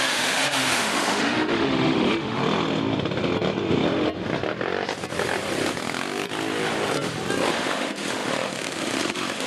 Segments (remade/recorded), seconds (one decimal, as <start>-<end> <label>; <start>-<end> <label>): 0.0-2.4 remade; 2.4-7.5 recorded; 7.5-9.5 remade